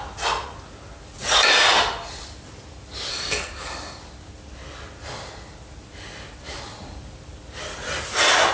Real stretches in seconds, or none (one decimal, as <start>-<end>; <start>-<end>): 0.0-3.1; 4.0-8.5